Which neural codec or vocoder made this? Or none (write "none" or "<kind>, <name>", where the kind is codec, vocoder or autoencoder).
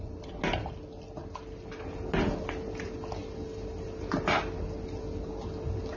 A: none